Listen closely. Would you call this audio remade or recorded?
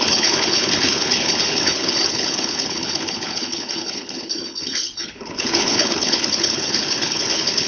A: remade